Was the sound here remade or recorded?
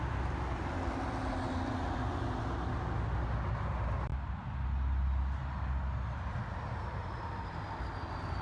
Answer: recorded